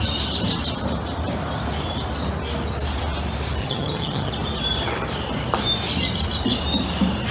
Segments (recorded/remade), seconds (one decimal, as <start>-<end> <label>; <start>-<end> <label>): 0.0-3.6 recorded; 3.6-4.3 remade; 4.3-7.3 recorded